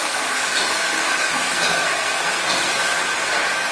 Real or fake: fake